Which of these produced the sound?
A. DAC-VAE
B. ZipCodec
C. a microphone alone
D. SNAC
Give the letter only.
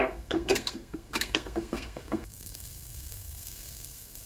D